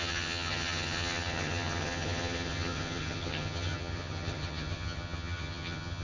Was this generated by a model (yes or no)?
yes